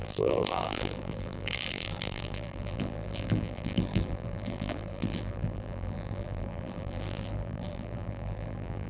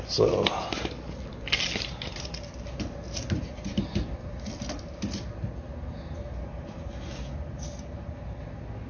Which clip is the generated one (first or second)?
first